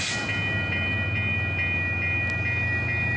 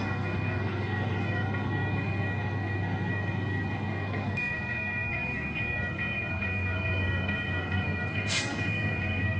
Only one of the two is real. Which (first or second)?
first